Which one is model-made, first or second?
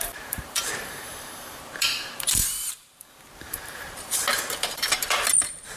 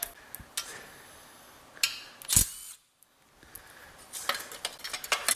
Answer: first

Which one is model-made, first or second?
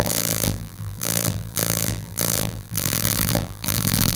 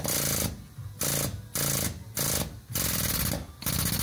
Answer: first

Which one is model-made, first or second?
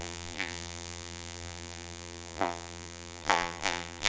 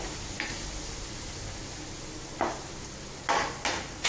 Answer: first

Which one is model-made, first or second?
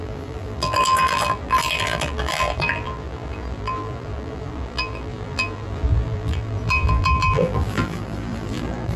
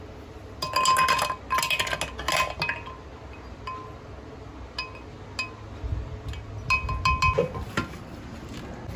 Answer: first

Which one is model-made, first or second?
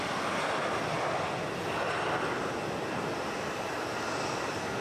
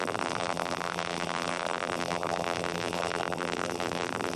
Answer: second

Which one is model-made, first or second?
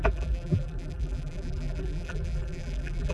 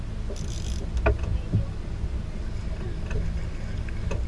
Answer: first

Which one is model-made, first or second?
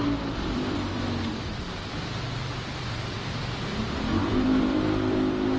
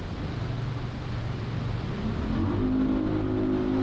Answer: first